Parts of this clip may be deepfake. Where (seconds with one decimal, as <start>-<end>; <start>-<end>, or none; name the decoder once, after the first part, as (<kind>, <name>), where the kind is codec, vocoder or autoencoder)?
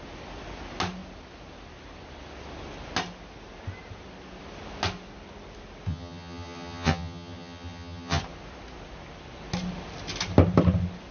5.9-8.2 (vocoder, HiFi-GAN)